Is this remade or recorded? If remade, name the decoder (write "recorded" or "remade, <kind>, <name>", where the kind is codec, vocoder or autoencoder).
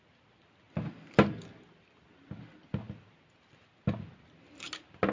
recorded